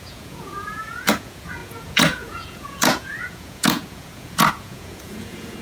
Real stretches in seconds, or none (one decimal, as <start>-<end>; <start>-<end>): none